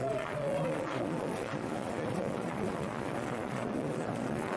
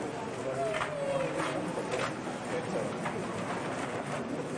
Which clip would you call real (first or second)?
second